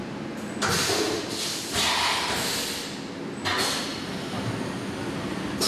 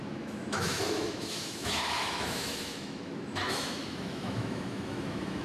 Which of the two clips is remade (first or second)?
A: second